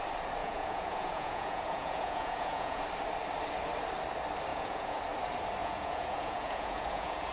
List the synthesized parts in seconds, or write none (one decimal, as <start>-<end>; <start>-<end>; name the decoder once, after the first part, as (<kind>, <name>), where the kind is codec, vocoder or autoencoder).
0.4-2.8 (vocoder, Vocos); 4.5-5.0; 5.6-7.3